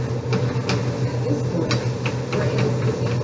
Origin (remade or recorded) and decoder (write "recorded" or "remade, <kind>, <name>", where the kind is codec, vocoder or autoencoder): recorded